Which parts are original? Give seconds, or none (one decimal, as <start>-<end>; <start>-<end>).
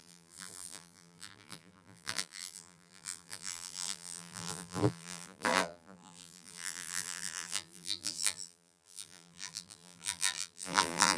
none